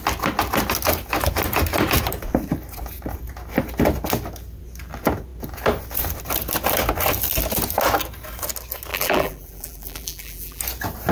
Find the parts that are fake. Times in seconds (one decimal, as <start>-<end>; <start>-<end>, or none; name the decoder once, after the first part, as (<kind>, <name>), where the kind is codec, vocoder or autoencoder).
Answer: 8.9-10.6 (vocoder, BigVGAN v2)